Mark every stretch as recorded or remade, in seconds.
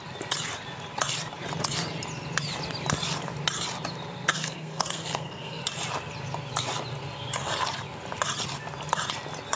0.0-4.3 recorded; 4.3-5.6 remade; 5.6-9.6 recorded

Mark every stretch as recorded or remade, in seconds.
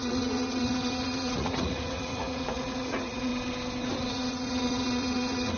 0.0-3.3 remade; 3.3-4.1 recorded; 4.1-5.6 remade